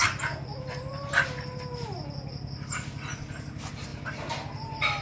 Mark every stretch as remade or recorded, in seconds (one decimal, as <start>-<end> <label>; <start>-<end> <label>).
0.0-5.0 recorded